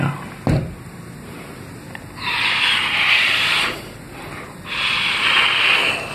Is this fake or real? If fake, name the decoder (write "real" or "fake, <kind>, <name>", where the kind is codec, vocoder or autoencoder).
real